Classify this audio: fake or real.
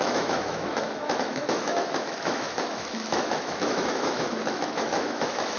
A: fake